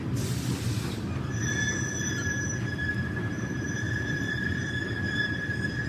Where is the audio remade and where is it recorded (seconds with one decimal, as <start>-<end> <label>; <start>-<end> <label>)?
0.0-2.2 recorded; 2.2-5.9 remade